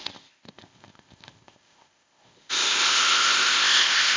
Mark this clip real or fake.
fake